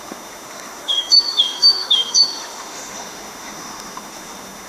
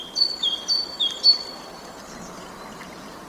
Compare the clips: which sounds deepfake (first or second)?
first